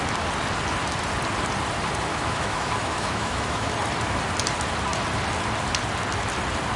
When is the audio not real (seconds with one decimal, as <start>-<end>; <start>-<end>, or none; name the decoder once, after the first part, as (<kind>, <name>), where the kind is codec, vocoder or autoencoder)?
2.1-3.7 (autoencoder, DAC-VAE)

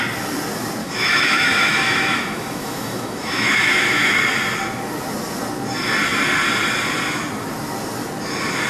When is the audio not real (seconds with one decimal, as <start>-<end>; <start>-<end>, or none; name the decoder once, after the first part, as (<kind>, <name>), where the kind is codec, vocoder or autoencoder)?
0.8-4.2 (autoencoder, DAC-VAE)